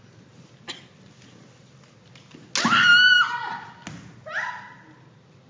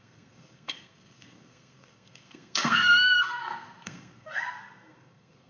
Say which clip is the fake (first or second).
second